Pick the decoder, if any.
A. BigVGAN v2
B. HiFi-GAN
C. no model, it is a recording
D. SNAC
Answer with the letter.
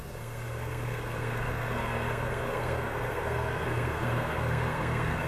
D